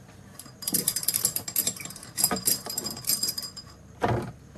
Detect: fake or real fake